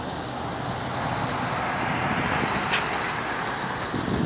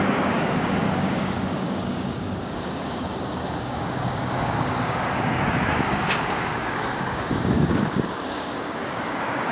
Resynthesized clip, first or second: second